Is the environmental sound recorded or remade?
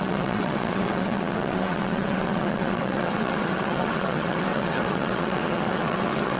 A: remade